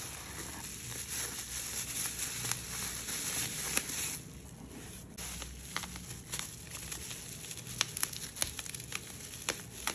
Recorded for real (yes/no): yes